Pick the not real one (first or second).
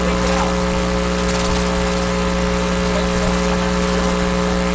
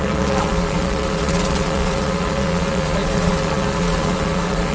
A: second